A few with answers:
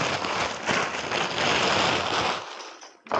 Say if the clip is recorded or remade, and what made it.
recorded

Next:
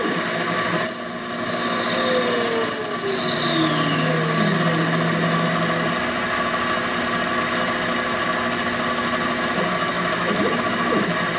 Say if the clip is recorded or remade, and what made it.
recorded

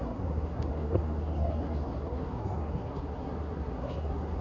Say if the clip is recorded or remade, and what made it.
remade, codec, SNAC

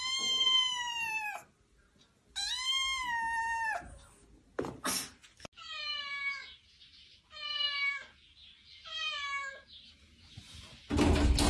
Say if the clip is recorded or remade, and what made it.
recorded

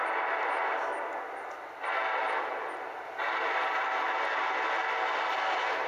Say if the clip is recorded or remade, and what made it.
recorded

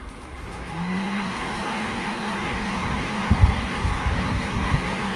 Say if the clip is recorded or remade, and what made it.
remade, codec, SNAC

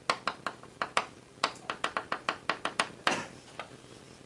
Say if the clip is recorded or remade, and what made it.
recorded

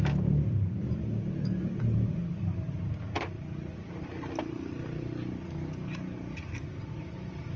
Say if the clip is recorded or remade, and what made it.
recorded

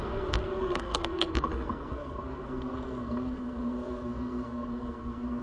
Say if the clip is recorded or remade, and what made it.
remade, codec, SNAC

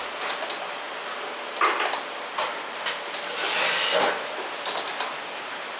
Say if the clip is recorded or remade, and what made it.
recorded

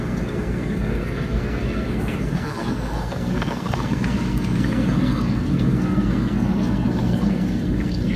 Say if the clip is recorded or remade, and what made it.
remade, codec, SNAC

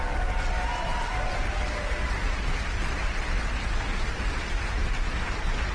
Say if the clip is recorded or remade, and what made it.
recorded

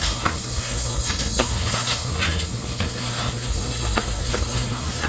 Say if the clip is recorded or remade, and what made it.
remade, codec, SNAC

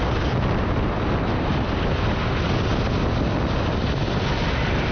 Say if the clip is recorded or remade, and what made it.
recorded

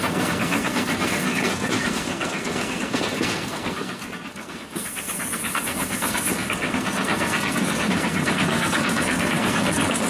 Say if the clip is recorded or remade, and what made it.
remade, codec, SNAC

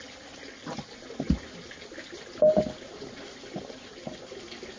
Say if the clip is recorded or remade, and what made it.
recorded